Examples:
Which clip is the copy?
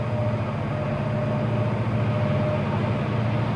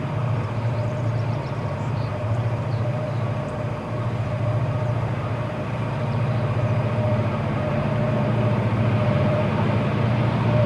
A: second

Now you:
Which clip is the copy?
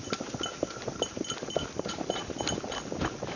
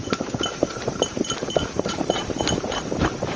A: second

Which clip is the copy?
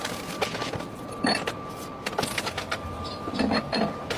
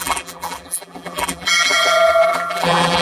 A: second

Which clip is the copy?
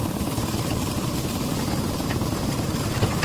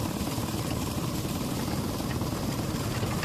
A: first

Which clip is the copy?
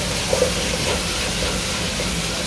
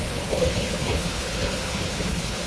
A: second